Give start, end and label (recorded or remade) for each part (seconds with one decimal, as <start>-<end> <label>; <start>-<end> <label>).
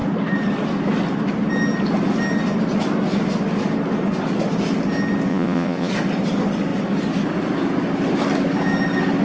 0.0-5.3 recorded; 5.3-5.9 remade; 5.9-9.2 recorded